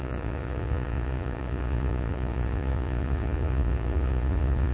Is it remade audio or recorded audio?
remade